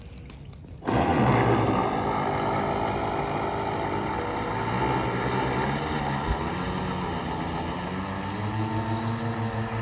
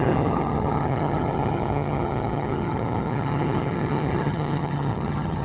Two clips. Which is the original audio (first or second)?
first